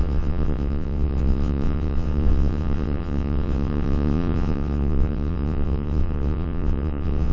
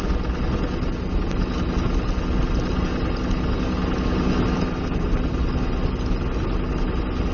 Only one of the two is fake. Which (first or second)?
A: first